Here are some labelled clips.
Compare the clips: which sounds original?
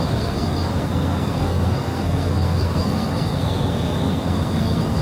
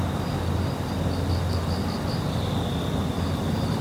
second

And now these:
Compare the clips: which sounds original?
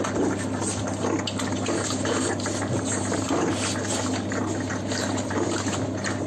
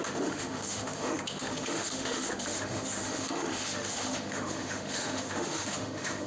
first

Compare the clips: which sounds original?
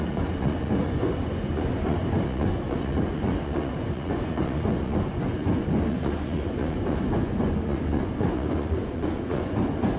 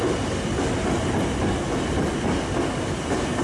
second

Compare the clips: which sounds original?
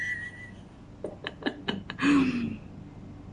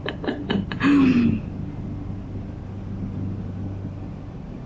first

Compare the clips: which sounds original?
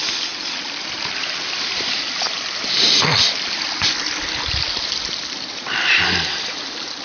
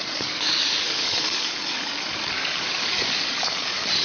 first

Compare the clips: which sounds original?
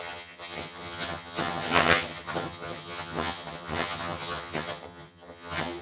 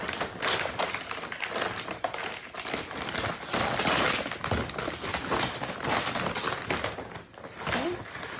second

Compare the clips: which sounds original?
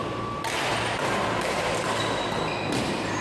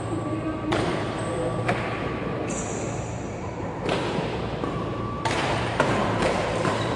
first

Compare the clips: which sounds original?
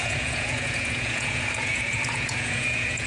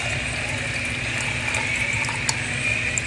second